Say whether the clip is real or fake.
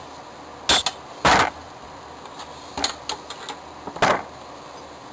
real